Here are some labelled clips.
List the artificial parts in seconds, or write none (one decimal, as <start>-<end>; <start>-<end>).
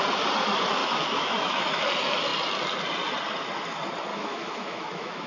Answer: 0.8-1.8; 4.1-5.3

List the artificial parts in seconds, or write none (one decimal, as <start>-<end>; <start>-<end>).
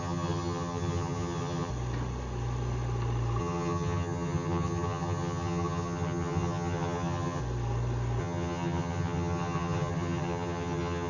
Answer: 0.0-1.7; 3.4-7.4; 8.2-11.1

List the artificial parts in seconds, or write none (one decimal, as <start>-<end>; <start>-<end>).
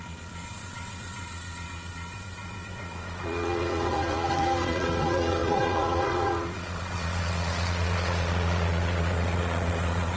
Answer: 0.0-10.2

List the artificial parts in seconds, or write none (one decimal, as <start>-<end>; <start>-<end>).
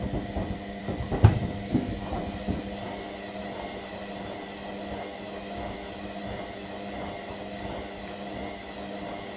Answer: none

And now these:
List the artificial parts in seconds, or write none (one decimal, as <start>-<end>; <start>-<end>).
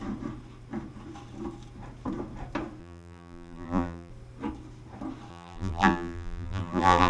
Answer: 2.8-4.1; 5.3-7.1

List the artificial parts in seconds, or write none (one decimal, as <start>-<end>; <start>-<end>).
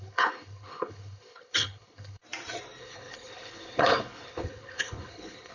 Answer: 0.0-2.2; 2.8-5.5